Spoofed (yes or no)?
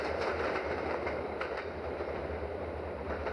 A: yes